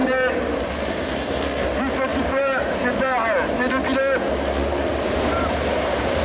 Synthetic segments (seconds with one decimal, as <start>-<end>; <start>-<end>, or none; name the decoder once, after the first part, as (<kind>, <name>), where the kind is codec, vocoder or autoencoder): 0.0-1.4 (vocoder, BigVGAN v2); 2.1-3.8; 4.9-6.2